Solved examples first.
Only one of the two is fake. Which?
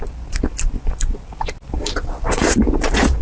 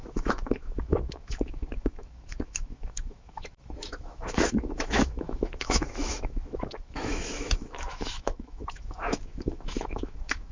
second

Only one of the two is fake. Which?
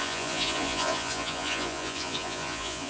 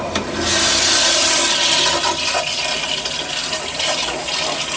first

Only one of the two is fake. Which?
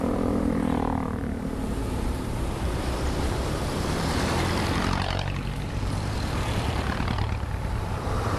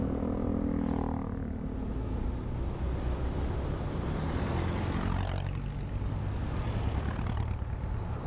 first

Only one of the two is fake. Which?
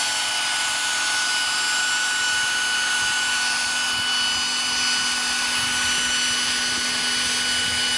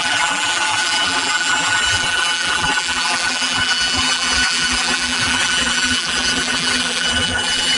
second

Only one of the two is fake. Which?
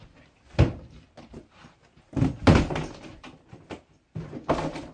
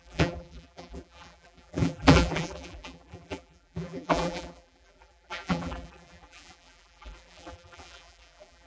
second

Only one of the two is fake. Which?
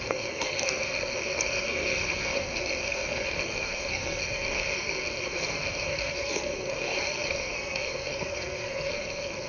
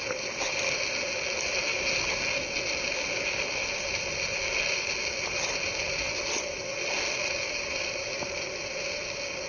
first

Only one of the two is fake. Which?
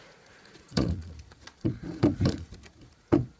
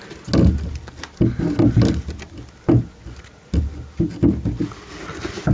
first